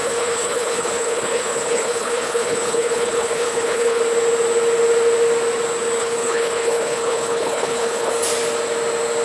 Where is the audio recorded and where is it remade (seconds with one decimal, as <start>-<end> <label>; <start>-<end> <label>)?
0.0-4.0 remade; 4.0-6.0 recorded; 6.0-8.1 remade; 8.1-9.2 recorded